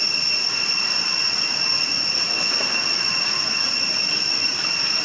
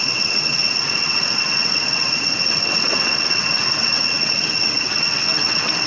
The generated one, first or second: second